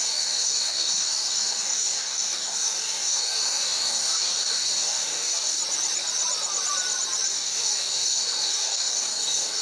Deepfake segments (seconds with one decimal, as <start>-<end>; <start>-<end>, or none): 0.0-5.6; 7.3-9.6